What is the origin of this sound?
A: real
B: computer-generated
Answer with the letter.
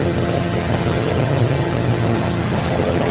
B